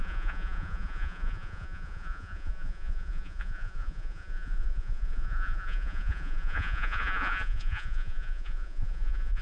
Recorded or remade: remade